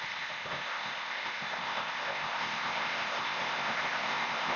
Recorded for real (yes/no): no